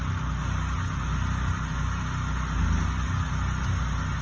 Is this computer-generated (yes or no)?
no